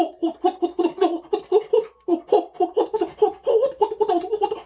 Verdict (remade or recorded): recorded